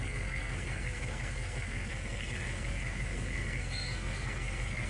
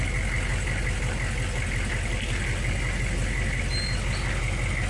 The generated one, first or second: first